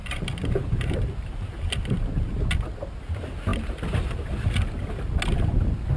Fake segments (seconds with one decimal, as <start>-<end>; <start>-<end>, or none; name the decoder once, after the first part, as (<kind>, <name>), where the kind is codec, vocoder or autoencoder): none